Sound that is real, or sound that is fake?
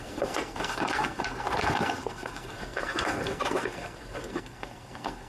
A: fake